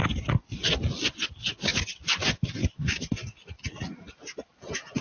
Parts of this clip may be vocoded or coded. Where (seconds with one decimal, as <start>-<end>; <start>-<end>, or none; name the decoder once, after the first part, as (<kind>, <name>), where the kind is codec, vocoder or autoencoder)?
none